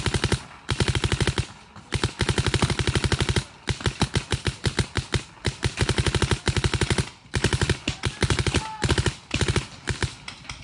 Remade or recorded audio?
recorded